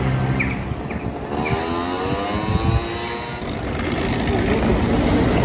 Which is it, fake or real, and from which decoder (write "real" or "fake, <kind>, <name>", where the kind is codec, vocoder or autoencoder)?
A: real